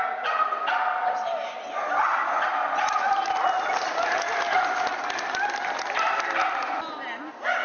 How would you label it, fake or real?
real